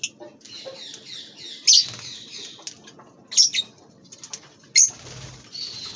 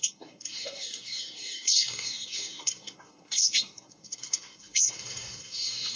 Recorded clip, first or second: first